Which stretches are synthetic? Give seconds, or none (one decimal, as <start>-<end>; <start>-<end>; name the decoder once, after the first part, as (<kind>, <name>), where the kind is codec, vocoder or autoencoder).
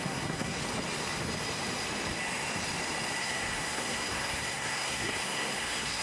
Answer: 0.0-0.6 (codec, SNAC); 3.2-6.0